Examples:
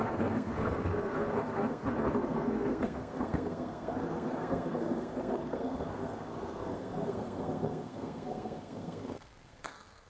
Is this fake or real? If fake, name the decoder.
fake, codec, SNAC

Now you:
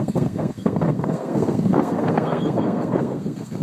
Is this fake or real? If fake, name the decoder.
fake, codec, SNAC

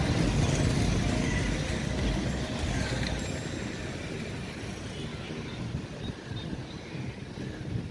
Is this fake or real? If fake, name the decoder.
real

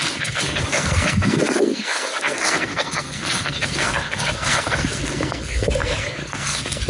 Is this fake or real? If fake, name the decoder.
fake, codec, SNAC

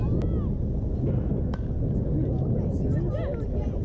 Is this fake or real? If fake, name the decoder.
real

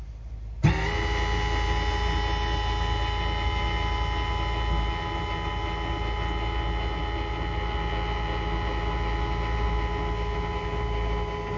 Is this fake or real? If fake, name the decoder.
real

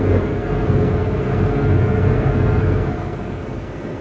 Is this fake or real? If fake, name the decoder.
fake, codec, SNAC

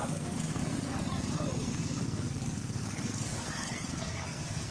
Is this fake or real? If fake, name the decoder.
fake, codec, SNAC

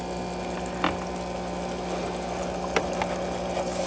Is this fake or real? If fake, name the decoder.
real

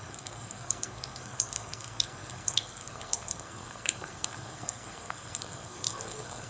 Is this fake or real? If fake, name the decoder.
fake, codec, SNAC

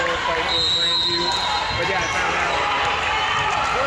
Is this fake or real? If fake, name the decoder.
real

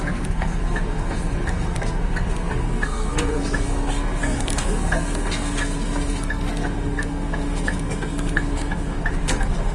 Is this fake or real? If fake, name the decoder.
fake, codec, SNAC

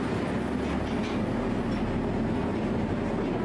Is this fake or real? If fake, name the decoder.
real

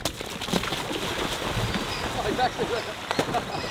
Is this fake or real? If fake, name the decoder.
real